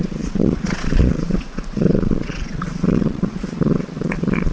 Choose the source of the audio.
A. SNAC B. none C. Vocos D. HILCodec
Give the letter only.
C